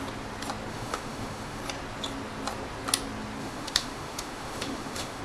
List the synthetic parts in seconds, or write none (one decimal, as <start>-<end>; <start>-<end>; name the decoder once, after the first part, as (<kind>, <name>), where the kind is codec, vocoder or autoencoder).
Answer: 0.7-1.6 (autoencoder, DAC-VAE); 3.4-5.2